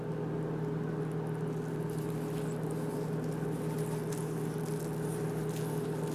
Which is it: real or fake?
real